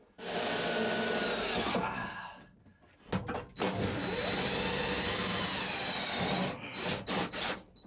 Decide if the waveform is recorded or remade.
recorded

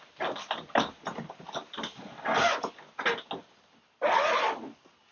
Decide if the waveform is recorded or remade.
recorded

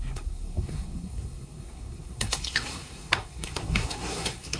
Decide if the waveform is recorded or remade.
remade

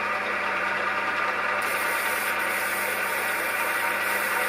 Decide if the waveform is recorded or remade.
remade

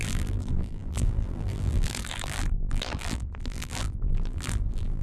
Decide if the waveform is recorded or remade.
remade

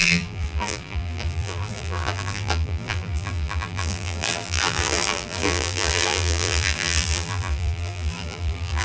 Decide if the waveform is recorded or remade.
remade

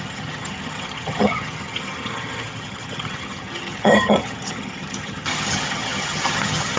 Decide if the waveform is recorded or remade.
remade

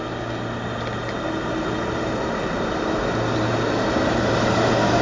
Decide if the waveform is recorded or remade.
recorded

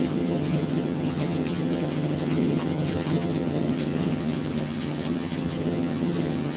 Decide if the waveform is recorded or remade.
remade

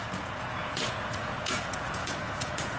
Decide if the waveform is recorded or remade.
remade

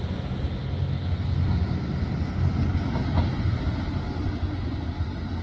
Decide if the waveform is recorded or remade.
recorded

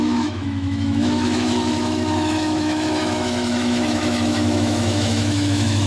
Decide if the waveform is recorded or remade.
remade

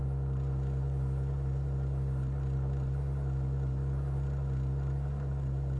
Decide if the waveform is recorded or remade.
recorded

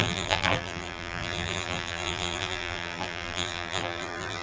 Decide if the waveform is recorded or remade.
remade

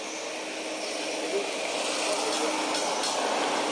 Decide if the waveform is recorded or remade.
recorded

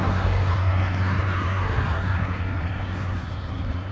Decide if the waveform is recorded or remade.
remade